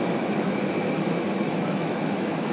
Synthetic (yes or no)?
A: yes